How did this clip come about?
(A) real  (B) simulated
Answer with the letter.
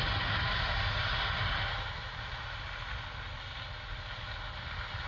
A